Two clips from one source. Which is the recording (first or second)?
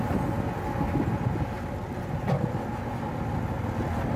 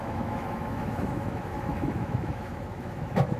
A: first